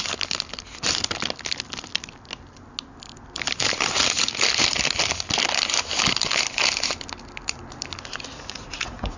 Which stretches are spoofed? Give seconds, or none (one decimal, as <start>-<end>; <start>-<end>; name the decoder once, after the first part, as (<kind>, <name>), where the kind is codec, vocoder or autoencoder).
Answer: 8.3-9.2 (vocoder, Vocos)